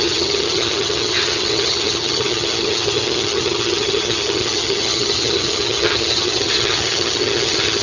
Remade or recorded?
remade